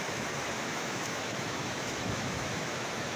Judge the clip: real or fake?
fake